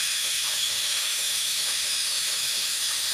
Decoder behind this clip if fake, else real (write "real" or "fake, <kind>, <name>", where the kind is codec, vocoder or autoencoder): fake, autoencoder, DAC-VAE